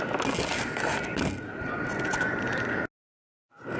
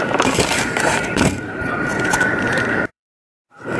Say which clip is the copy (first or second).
second